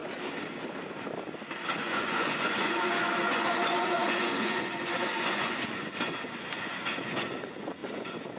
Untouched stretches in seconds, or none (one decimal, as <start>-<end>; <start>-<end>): 0.0-1.8